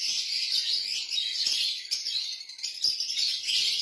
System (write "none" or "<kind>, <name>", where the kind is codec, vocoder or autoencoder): none